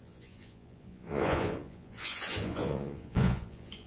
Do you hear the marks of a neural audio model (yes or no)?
yes